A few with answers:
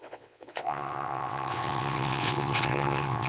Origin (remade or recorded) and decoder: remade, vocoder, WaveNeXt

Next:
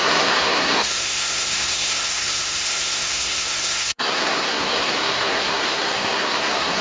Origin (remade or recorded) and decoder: remade, codec, SNAC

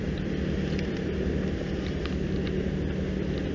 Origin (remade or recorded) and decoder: recorded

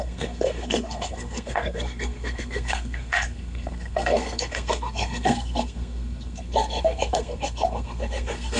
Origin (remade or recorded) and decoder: remade, codec, SNAC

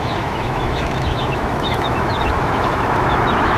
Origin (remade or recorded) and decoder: remade, autoencoder, DAC-VAE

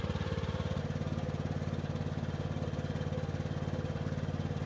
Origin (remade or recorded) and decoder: recorded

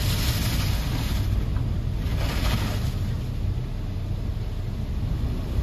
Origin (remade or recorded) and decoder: recorded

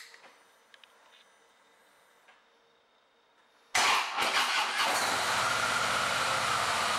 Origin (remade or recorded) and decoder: recorded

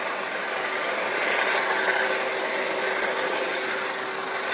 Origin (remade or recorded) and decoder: recorded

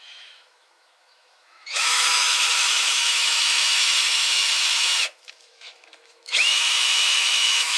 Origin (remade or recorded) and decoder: remade, autoencoder, DAC-VAE